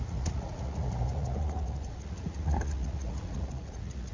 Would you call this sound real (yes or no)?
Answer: no